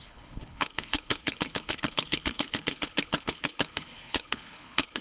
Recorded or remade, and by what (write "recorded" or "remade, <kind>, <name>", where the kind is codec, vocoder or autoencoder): remade, codec, HILCodec